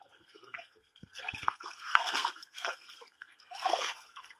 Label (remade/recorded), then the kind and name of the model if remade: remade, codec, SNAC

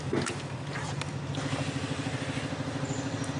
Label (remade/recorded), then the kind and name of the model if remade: recorded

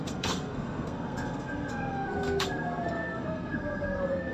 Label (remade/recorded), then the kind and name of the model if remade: remade, codec, SNAC